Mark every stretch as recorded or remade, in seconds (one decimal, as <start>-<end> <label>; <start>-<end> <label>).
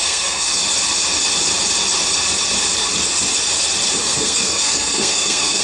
0.0-0.6 remade; 0.6-4.0 recorded; 4.0-5.6 remade